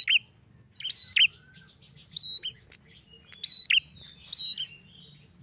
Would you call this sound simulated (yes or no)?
no